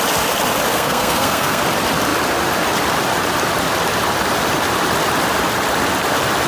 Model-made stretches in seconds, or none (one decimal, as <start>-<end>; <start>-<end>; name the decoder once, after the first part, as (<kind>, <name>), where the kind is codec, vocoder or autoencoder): 0.7-1.6 (codec, SNAC)